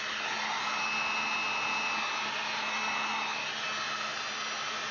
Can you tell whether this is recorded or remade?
recorded